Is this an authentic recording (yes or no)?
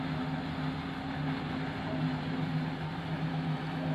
yes